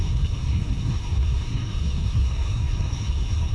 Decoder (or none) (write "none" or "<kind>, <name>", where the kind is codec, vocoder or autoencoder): codec, SNAC